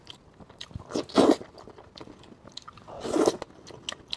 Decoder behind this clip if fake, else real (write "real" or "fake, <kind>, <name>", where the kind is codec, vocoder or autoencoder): real